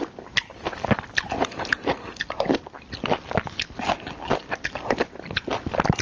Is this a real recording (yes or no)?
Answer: yes